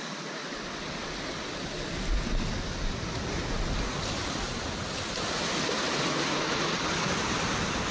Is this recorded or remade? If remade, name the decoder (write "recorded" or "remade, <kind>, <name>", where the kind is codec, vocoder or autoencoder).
recorded